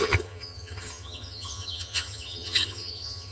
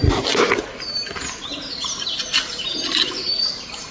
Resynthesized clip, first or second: first